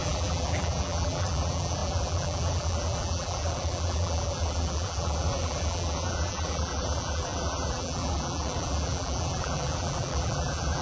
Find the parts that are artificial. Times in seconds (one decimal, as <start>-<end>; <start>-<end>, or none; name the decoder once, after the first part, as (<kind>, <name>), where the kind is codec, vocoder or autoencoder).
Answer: 0.0-10.8 (vocoder, BigVGAN v2)